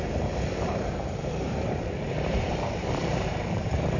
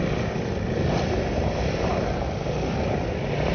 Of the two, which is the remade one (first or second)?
first